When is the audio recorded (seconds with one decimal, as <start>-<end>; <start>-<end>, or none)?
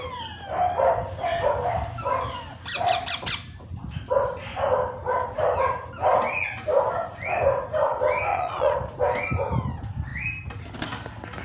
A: 0.0-8.3; 9.0-11.4